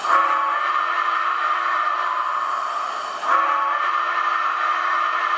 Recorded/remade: remade